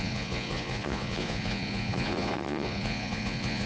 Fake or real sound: fake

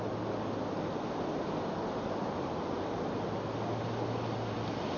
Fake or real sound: real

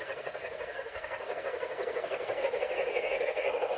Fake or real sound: fake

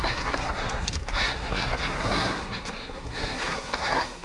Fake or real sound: fake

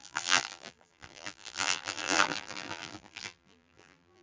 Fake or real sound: fake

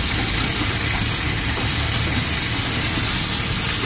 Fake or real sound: real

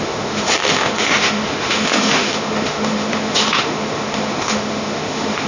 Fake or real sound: fake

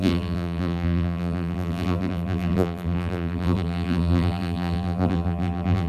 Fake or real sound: fake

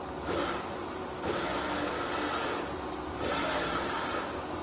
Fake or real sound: real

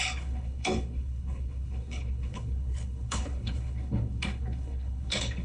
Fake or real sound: fake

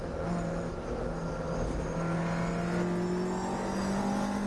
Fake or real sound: real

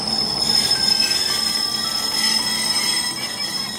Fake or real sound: real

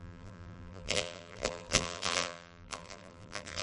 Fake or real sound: fake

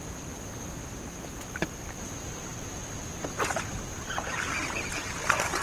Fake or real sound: real